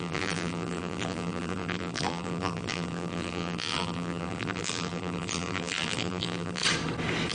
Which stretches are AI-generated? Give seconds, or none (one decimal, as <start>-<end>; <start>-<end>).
0.0-6.6